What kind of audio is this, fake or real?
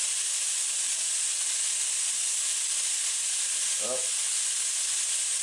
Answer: real